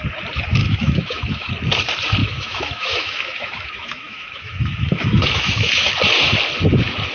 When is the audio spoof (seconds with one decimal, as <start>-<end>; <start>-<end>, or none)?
0.6-1.5; 2.2-5.9

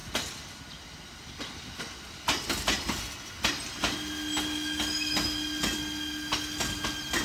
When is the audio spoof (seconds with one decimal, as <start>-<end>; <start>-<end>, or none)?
none

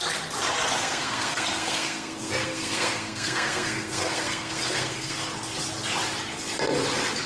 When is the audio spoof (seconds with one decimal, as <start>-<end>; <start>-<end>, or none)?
0.8-5.2

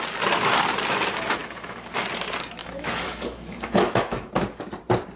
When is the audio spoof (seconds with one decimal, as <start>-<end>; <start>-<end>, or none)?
1.4-2.0; 2.6-4.3

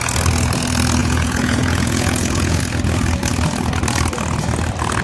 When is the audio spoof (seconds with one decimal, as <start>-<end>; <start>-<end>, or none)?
1.0-2.6